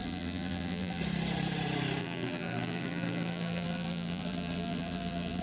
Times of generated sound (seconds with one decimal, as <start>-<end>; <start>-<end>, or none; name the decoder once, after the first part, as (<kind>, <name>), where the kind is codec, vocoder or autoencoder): 0.0-1.0 (vocoder, BigVGAN v2); 2.0-5.4